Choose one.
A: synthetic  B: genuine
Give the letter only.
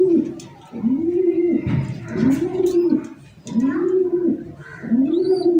B